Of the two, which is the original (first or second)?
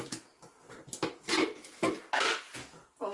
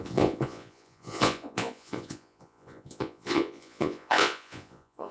first